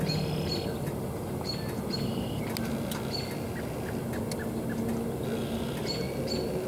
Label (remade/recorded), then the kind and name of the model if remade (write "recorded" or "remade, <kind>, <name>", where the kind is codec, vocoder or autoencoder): recorded